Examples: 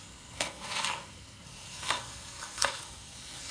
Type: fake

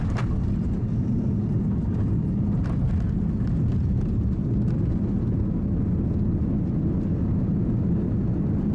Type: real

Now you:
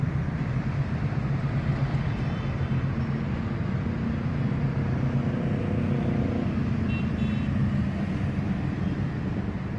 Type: real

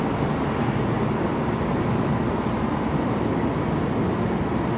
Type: real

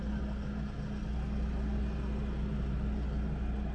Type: real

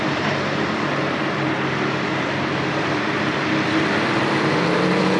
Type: fake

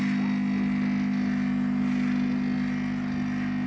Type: real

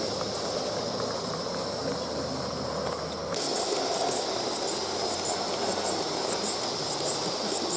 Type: real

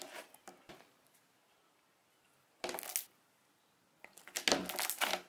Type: real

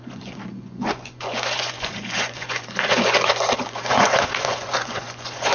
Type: fake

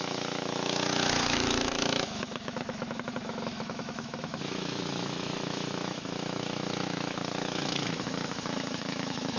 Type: fake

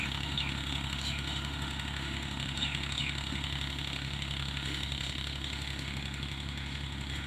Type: fake